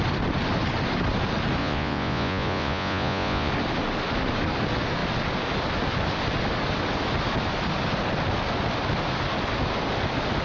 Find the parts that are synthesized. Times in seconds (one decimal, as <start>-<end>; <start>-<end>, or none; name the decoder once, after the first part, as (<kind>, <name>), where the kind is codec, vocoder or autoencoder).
1.6-3.5 (vocoder, Vocos)